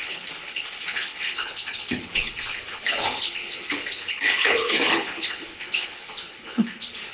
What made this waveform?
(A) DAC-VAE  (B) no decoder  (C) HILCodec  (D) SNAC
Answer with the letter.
C